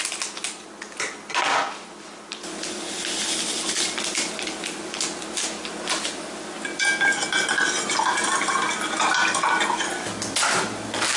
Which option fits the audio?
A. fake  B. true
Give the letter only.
B